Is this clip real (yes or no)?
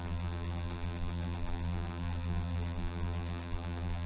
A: no